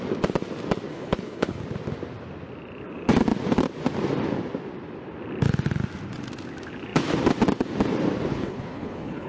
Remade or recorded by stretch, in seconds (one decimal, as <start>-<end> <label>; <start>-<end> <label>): 0.0-0.9 recorded; 0.9-1.6 remade; 1.6-8.3 recorded; 8.3-9.3 remade